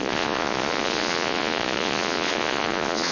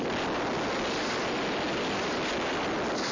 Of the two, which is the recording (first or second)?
second